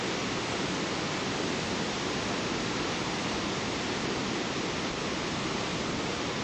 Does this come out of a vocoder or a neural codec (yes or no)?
no